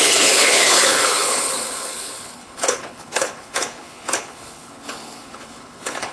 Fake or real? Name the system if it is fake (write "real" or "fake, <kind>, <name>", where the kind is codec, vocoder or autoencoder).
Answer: fake, codec, HILCodec